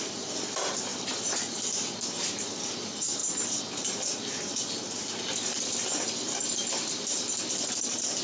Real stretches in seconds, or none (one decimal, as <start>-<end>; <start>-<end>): 0.0-0.9; 1.4-8.2